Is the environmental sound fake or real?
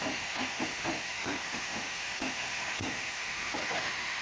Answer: fake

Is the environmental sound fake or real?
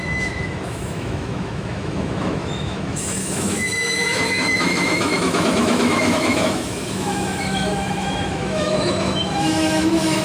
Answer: fake